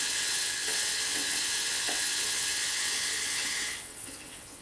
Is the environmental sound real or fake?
fake